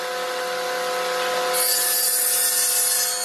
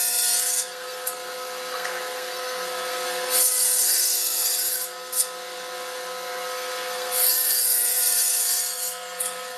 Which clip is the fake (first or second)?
second